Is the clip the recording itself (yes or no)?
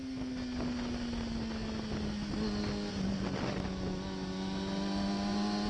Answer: yes